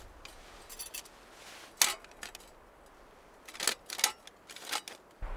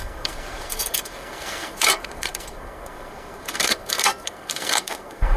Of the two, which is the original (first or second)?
first